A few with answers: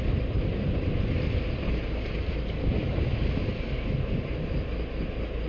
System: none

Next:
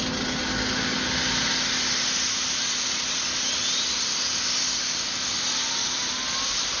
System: none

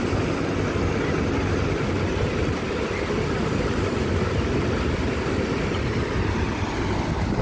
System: none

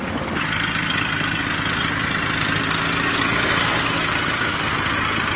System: none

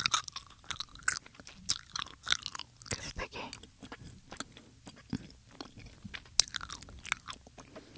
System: none